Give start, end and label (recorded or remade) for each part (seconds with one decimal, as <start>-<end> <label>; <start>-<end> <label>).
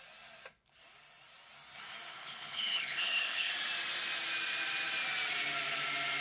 0.0-2.1 recorded; 2.1-3.5 remade; 3.5-6.2 recorded